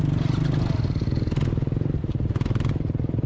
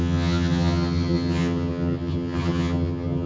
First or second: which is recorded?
first